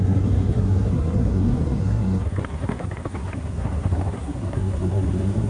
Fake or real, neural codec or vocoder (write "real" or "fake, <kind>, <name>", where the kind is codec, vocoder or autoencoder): fake, codec, SNAC